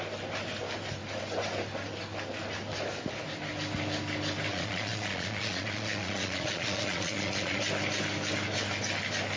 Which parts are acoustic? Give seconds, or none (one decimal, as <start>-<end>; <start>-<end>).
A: 0.0-4.5; 7.6-9.4